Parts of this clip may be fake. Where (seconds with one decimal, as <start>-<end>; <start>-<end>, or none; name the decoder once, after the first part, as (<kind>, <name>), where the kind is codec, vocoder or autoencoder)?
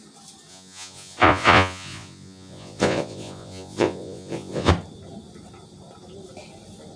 0.5-4.7 (vocoder, Vocos)